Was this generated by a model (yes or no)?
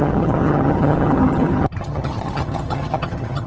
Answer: yes